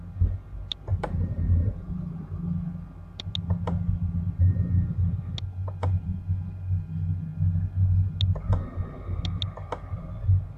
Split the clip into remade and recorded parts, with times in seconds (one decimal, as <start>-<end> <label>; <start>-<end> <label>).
0.0-0.9 recorded; 0.9-2.2 remade; 2.2-10.6 recorded